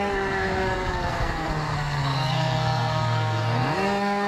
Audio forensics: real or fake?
fake